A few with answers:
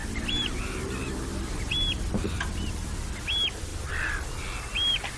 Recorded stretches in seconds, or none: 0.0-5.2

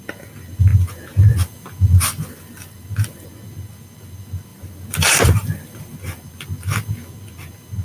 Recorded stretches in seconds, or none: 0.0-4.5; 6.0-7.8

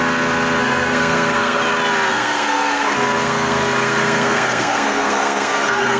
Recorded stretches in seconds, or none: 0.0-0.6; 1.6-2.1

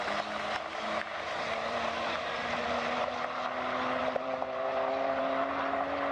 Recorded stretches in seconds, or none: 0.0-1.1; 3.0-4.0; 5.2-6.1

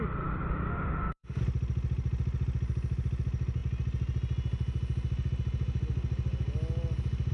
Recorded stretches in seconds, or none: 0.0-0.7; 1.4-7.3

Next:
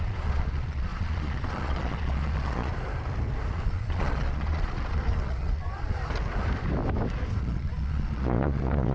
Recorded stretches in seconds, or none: 2.7-3.5; 6.0-7.4

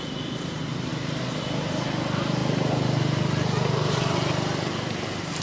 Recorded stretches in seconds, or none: 0.0-5.4

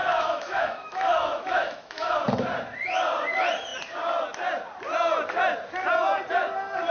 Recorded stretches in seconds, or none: 2.2-6.9